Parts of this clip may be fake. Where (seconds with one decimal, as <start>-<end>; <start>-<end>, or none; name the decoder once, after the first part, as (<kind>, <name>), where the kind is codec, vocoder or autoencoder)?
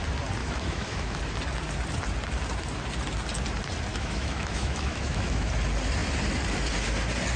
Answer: 0.4-1.2 (autoencoder, DAC-VAE); 3.9-5.5